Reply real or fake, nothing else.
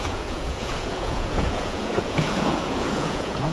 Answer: fake